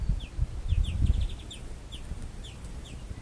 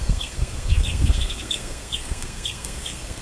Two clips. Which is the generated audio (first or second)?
second